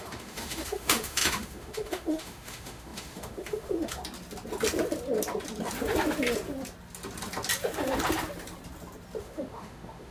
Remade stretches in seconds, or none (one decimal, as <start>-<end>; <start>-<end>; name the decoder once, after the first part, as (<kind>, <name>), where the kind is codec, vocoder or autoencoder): 0.0-4.0 (autoencoder, DAC-VAE); 9.2-10.1